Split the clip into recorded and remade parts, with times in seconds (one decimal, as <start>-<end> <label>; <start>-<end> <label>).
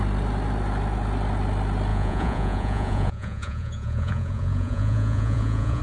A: 0.0-1.9 recorded; 1.9-5.8 remade